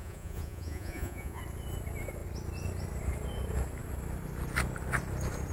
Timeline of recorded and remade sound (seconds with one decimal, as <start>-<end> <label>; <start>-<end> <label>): 0.0-1.4 remade; 1.4-5.5 recorded